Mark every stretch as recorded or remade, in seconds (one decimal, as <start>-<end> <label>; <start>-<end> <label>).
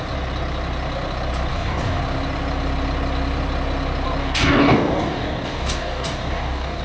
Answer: 0.0-1.5 recorded; 1.5-2.0 remade; 2.0-4.2 recorded; 4.2-6.8 remade